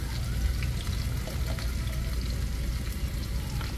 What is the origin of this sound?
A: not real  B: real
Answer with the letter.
B